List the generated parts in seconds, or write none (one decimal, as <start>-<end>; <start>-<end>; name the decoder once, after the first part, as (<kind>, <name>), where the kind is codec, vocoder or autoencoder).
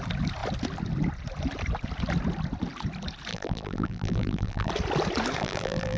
3.3-4.7 (vocoder, BigVGAN v2); 5.4-6.0